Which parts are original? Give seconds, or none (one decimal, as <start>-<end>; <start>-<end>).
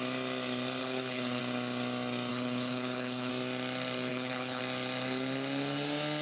0.0-0.8; 1.4-2.3; 3.3-4.1; 4.6-6.2